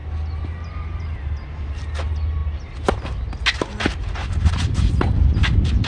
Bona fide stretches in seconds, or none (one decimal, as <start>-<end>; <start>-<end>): 0.0-5.9